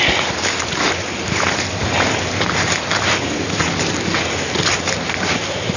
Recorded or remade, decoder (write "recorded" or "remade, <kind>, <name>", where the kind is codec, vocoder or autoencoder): recorded